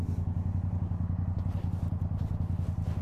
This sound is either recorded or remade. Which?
recorded